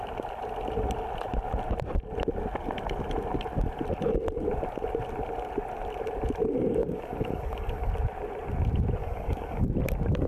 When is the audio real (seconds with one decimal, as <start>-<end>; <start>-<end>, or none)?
0.0-6.8; 7.9-9.0; 9.7-10.3